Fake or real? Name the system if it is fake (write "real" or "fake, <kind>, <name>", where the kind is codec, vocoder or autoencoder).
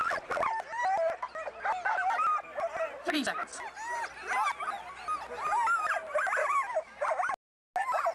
real